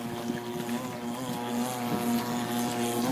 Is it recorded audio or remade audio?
recorded